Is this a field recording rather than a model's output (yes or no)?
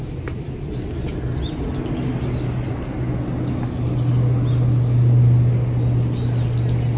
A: yes